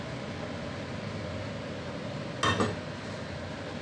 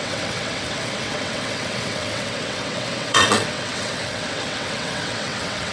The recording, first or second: first